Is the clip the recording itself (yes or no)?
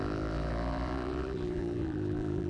no